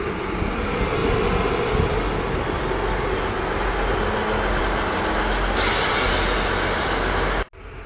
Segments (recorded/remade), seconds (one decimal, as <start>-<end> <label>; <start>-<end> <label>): 0.0-6.7 recorded; 6.7-7.4 remade; 7.4-7.9 recorded